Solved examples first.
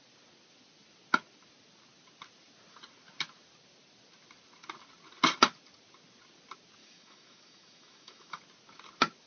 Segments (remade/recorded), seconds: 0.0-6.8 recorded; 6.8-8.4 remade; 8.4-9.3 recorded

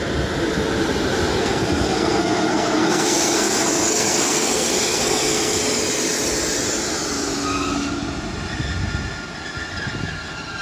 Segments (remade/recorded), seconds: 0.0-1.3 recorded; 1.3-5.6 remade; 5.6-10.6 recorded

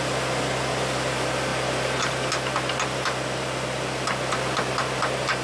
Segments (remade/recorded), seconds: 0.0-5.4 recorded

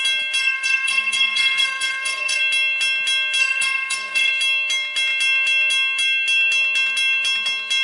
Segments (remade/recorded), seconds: 0.0-0.4 recorded; 0.4-2.4 remade; 2.4-3.4 recorded; 3.4-4.3 remade; 4.3-7.8 recorded

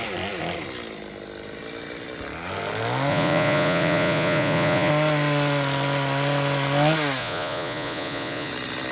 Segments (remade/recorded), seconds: 0.0-3.1 recorded; 3.1-4.9 remade; 4.9-7.2 recorded; 7.2-8.5 remade; 8.5-8.9 recorded

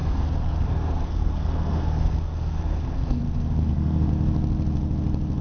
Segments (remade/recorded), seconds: 0.0-3.2 remade; 3.2-3.6 recorded; 3.6-4.1 remade; 4.1-5.4 recorded